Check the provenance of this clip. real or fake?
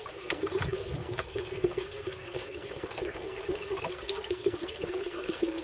fake